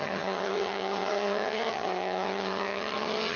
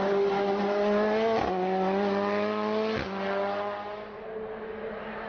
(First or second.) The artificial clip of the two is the first